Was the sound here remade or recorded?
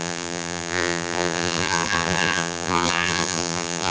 remade